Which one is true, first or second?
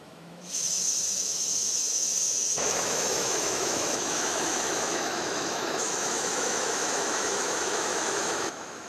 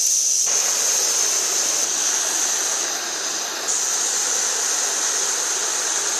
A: second